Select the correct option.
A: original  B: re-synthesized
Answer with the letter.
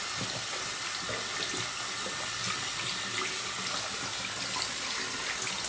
A